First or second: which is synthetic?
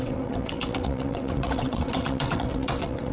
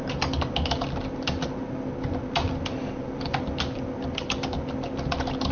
first